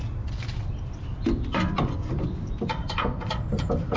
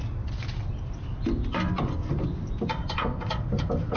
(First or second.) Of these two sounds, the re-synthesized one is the first